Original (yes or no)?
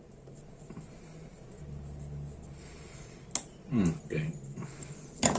yes